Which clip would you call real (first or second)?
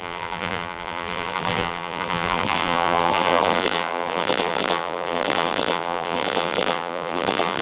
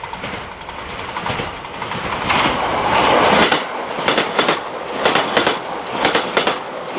second